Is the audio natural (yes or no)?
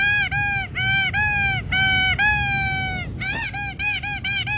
yes